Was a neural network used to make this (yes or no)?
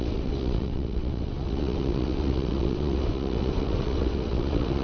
yes